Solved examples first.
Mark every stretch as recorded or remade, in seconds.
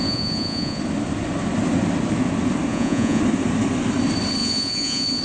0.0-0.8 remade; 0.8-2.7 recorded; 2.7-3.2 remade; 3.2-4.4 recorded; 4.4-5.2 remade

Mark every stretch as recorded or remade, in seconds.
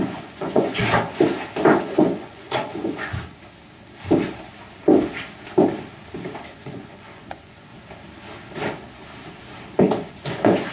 0.0-0.8 remade; 0.8-1.8 recorded; 1.8-3.1 remade; 3.1-6.5 recorded; 6.5-7.7 remade; 7.7-9.8 recorded; 9.8-10.7 remade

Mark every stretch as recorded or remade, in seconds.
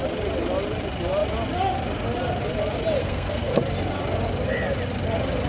0.0-3.0 recorded; 3.0-3.5 remade; 3.5-5.5 recorded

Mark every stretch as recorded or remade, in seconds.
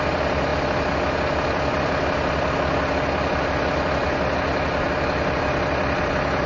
0.0-6.5 recorded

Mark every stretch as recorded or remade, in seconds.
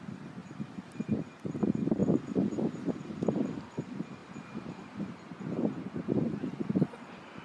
0.0-0.4 recorded; 0.4-1.2 remade; 1.2-2.0 recorded; 2.0-3.4 remade; 3.4-7.4 recorded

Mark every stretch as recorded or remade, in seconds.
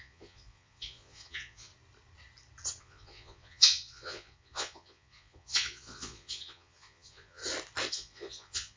0.0-1.7 remade; 1.7-2.8 recorded; 2.8-7.4 remade; 7.4-7.9 recorded; 7.9-8.8 remade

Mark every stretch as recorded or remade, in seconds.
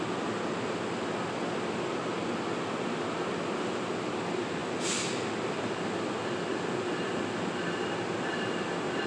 0.0-9.1 recorded